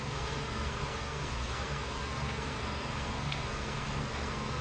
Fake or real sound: fake